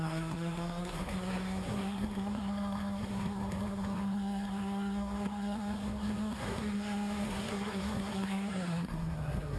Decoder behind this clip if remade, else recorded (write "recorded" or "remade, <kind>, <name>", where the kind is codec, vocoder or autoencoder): remade, codec, SNAC